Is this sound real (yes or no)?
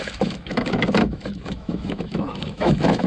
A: no